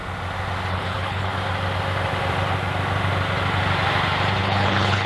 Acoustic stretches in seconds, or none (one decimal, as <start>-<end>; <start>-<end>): 0.0-0.7; 1.3-4.4